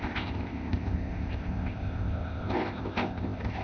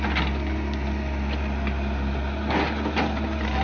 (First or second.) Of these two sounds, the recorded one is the second